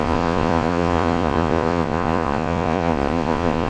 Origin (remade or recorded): remade